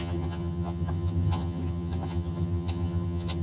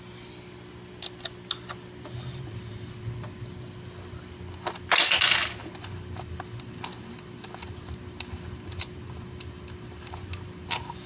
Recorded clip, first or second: second